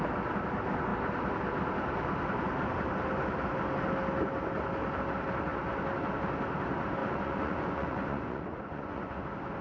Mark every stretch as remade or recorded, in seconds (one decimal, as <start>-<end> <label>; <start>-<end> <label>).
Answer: 0.0-7.0 recorded; 7.0-9.2 remade; 9.2-9.6 recorded